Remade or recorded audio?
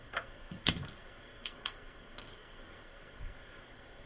remade